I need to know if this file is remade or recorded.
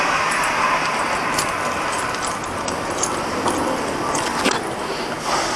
remade